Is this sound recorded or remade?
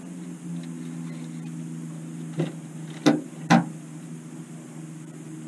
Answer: recorded